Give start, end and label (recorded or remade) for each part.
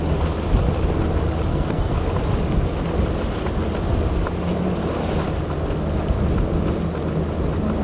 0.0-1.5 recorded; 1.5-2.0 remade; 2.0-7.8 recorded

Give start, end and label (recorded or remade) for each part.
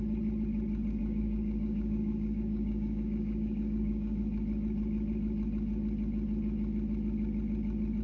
0.0-1.0 recorded; 1.0-4.2 remade; 4.2-8.0 recorded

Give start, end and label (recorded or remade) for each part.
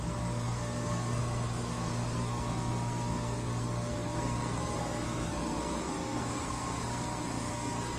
0.0-8.0 remade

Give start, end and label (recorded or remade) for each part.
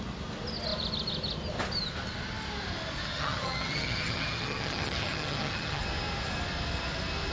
0.0-3.0 recorded; 3.0-5.8 remade; 5.8-7.3 recorded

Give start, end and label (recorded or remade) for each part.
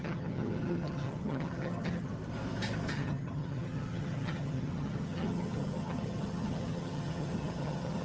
0.0-2.1 remade; 2.1-2.9 recorded; 2.9-8.0 remade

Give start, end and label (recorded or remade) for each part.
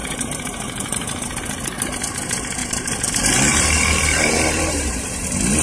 0.0-1.4 remade; 1.4-2.6 recorded; 2.6-3.1 remade; 3.1-3.5 recorded; 3.5-5.1 remade; 5.1-5.6 recorded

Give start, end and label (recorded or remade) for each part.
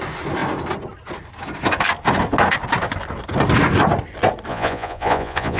0.0-4.5 recorded; 4.5-5.6 remade